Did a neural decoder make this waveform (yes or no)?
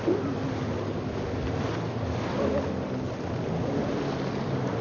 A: no